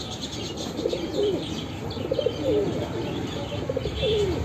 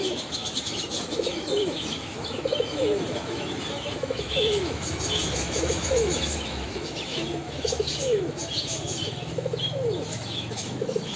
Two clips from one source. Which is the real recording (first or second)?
first